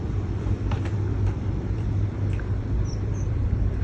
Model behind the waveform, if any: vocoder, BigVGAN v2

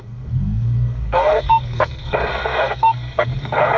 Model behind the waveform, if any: codec, SNAC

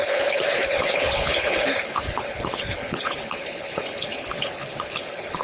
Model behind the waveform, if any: codec, HILCodec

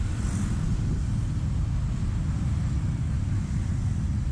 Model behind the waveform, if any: vocoder, BigVGAN v2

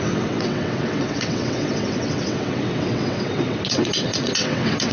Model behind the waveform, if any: vocoder, WaveNeXt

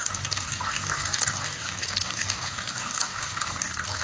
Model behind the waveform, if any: codec, DAC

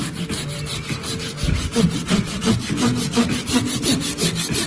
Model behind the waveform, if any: none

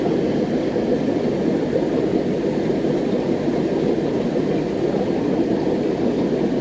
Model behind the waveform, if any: none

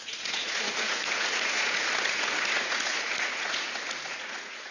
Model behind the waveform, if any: vocoder, Vocos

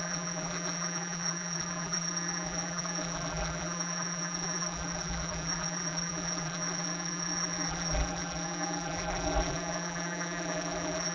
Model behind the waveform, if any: vocoder, BigVGAN v2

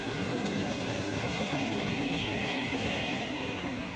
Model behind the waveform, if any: codec, SNAC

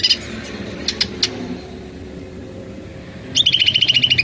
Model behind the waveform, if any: none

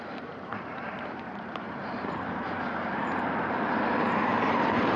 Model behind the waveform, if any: vocoder, BigVGAN v2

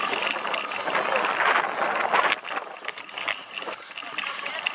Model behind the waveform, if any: none